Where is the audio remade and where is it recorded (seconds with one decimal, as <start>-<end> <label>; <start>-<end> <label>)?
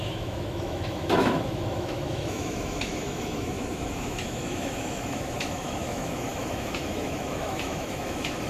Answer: 0.0-8.5 remade